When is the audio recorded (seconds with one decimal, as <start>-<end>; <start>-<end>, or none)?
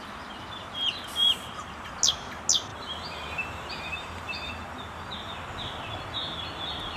0.0-1.2; 1.9-2.7; 4.5-7.0